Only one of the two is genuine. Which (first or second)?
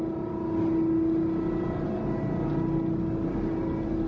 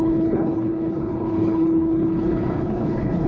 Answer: first